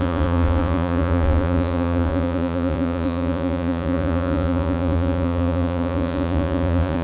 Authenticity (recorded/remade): remade